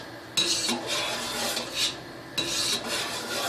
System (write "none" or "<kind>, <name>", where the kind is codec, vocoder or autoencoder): none